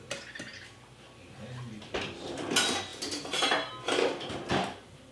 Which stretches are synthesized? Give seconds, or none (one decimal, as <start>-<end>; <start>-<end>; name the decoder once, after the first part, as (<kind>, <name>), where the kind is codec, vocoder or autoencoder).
none